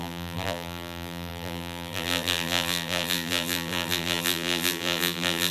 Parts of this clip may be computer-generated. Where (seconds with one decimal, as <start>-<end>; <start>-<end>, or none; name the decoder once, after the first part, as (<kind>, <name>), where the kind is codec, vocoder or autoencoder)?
0.0-5.5 (vocoder, BigVGAN v2)